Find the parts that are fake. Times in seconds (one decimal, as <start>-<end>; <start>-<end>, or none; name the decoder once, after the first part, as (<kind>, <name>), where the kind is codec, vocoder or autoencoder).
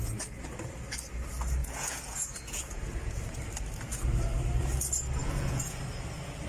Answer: 1.6-3.2 (vocoder, Vocos); 5.2-5.8